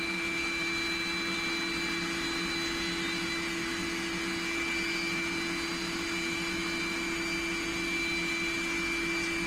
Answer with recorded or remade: recorded